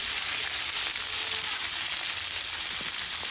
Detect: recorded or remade recorded